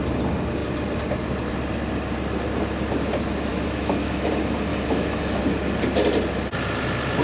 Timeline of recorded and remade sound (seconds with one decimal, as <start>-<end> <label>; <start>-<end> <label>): 0.0-3.5 recorded; 3.5-4.3 remade; 4.3-4.7 recorded; 4.7-5.4 remade; 5.4-7.2 recorded

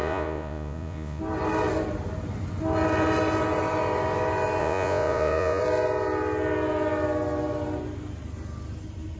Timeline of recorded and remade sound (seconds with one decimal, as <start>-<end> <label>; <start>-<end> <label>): 0.0-1.2 remade; 1.2-4.6 recorded; 4.6-5.6 remade; 5.6-9.2 recorded

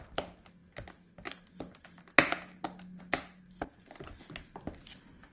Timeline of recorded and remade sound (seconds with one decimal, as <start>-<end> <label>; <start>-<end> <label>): 0.0-5.3 recorded